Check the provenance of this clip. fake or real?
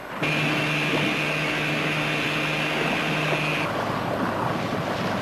real